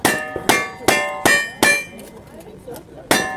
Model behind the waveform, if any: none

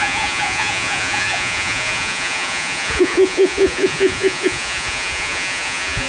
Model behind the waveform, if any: vocoder, Vocos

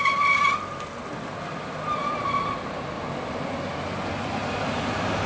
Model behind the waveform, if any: none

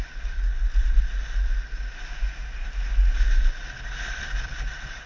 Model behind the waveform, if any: none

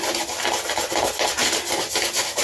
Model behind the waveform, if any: none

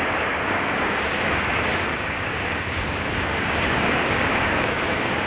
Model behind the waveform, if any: codec, DAC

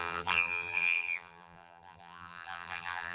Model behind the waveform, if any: vocoder, BigVGAN v2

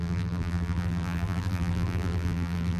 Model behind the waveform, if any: vocoder, BigVGAN v2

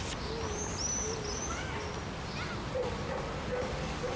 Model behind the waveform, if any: none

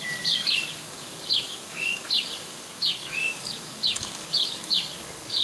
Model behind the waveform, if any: codec, DAC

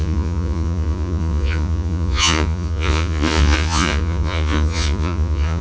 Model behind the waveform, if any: vocoder, Vocos